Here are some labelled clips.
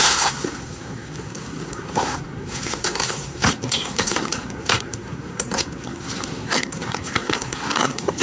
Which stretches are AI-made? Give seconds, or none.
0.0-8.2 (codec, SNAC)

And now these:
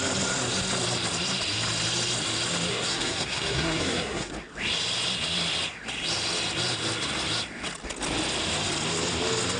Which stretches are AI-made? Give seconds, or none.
2.7-4.3 (codec, SNAC)

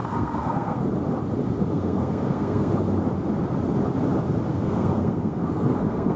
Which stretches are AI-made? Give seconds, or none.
0.0-0.8 (codec, SNAC); 1.7-2.7; 4.5-6.2

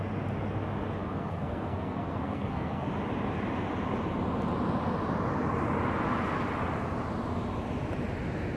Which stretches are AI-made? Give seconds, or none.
1.0-2.9 (codec, SNAC)